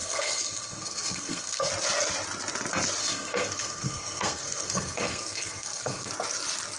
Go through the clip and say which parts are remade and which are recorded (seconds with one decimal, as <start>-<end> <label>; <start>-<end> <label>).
0.0-1.7 remade; 1.7-3.0 recorded; 3.0-6.1 remade; 6.1-6.8 recorded